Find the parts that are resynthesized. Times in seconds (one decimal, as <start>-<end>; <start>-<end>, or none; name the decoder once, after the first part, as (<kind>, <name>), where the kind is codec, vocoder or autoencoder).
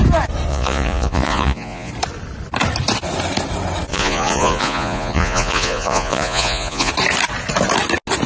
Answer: 0.5-1.9 (vocoder, Vocos); 3.9-6.9